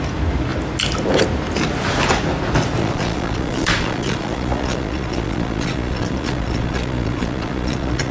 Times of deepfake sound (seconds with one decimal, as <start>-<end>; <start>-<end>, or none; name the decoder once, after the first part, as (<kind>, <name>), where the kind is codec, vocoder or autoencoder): 2.8-8.1 (vocoder, Vocos)